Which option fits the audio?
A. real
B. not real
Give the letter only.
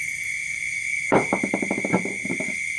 B